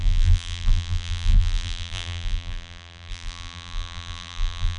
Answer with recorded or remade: remade